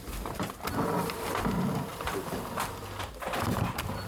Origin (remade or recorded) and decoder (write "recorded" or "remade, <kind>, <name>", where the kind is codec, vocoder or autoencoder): recorded